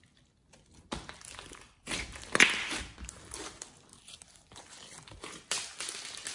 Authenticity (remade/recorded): recorded